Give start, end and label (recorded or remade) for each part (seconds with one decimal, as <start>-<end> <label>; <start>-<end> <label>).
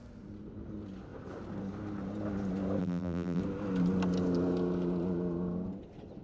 0.0-2.8 recorded; 2.8-3.4 remade; 3.4-6.2 recorded